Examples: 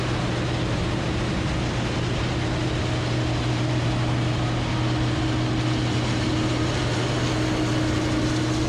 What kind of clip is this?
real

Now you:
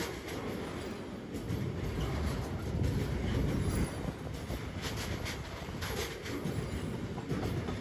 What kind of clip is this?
real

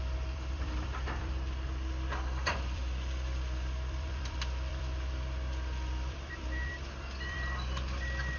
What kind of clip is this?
fake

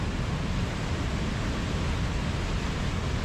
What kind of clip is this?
real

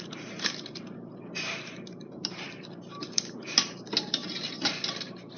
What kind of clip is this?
fake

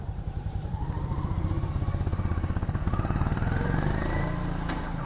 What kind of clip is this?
fake